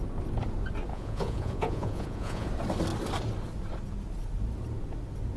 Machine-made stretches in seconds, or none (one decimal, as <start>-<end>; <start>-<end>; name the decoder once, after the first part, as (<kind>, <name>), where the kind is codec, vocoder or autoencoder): 0.9-2.5 (vocoder, Vocos)